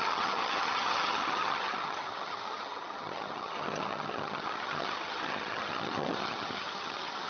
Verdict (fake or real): fake